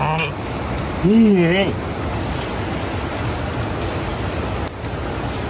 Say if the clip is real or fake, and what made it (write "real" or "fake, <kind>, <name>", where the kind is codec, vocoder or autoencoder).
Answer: real